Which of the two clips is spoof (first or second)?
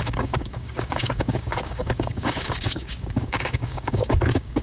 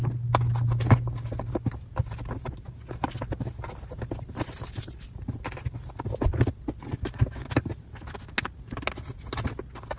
first